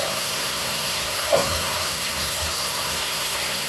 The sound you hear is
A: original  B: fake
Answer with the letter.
B